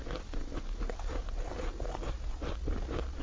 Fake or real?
real